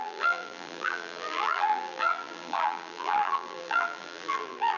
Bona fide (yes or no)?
no